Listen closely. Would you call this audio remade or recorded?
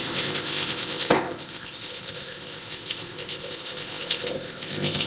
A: remade